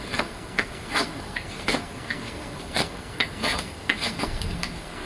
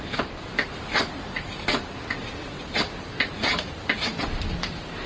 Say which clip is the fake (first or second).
first